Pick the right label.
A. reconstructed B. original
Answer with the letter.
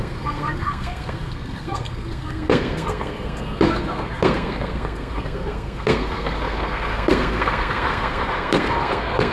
A